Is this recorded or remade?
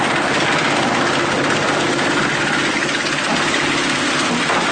recorded